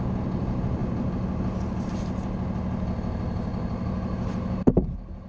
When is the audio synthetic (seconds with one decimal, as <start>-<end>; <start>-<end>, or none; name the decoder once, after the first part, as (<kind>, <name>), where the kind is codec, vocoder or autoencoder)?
none